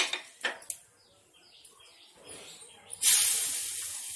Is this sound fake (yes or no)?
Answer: no